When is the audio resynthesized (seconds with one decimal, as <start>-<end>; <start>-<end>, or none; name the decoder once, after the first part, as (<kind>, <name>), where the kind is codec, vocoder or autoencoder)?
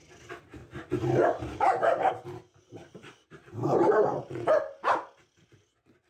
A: 0.6-2.1 (vocoder, BigVGAN v2); 2.8-3.9